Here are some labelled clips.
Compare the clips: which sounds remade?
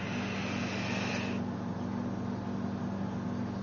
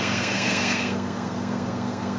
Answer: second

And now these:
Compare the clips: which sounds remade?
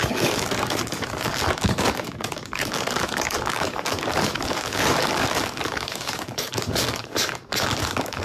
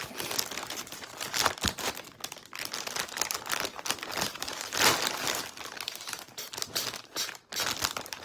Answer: first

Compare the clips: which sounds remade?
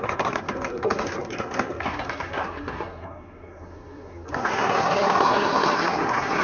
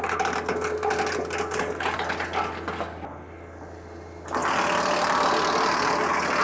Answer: first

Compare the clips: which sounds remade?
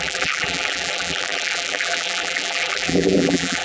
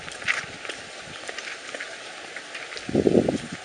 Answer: first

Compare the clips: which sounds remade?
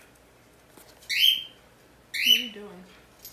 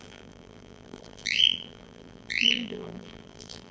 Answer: second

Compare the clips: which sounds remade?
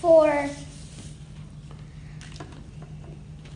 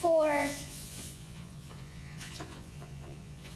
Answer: second